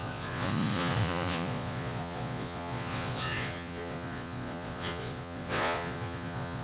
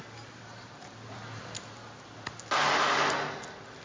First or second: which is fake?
first